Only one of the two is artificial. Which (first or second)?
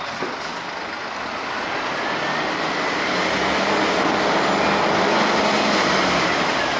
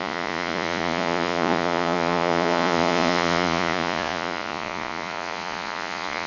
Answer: second